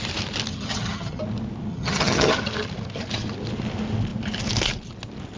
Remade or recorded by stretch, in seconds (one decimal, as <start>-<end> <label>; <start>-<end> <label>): 0.0-0.5 recorded; 0.5-1.2 remade; 1.2-1.7 recorded; 1.7-2.3 remade; 2.3-5.4 recorded